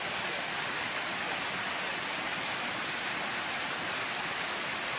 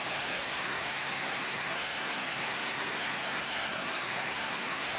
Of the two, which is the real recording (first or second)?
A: first